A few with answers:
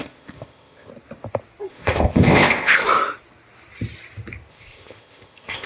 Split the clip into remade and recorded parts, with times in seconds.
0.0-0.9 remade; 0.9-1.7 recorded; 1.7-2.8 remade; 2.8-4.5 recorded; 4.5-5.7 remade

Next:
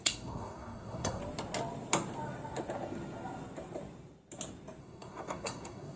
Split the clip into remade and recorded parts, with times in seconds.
0.0-1.2 remade; 1.2-4.8 recorded; 4.8-6.0 remade

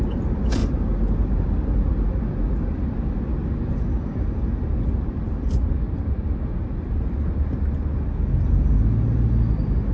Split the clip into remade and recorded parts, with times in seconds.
0.0-9.9 recorded